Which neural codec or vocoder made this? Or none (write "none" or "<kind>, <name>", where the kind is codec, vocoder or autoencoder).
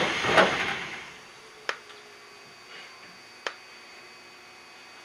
vocoder, BigVGAN v2